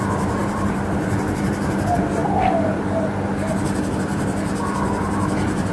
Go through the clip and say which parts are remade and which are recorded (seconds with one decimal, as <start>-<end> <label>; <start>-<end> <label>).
0.0-0.4 recorded; 0.4-1.3 remade; 1.3-5.7 recorded